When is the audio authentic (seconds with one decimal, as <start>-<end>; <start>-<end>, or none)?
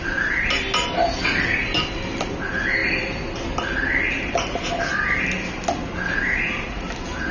0.0-7.3